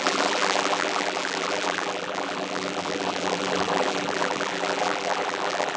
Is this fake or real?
fake